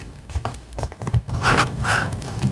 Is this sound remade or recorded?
remade